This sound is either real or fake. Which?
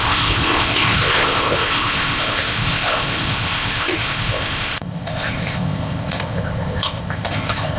fake